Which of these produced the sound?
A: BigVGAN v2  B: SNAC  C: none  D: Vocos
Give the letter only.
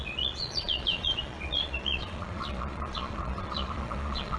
D